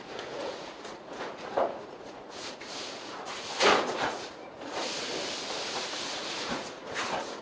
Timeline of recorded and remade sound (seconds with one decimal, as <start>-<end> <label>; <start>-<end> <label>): 0.0-5.1 remade; 5.1-5.6 recorded; 5.6-7.4 remade

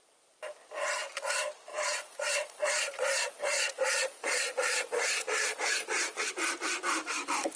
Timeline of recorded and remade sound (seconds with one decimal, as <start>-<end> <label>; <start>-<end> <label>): 0.0-1.7 recorded; 1.7-6.3 remade; 6.3-7.6 recorded

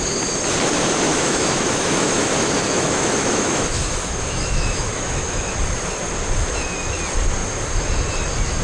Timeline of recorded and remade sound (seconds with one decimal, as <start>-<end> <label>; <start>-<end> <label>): 0.0-1.1 recorded; 1.1-5.6 remade; 5.6-8.6 recorded

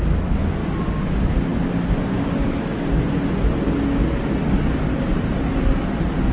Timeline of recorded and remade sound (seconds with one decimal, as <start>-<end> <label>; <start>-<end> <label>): 0.0-0.6 recorded; 0.6-1.1 remade; 1.1-6.3 recorded